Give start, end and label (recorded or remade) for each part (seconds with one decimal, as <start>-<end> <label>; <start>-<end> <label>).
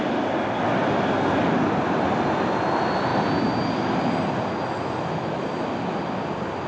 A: 0.0-6.7 recorded